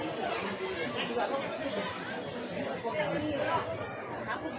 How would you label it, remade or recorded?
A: recorded